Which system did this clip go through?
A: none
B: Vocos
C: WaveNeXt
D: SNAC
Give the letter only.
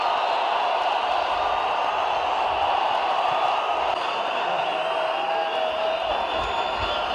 A